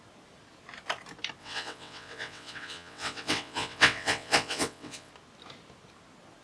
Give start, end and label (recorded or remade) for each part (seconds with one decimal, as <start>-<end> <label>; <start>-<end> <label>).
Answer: 0.0-1.4 recorded; 1.4-5.1 remade; 5.1-6.4 recorded